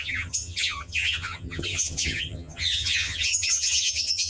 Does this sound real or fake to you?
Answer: fake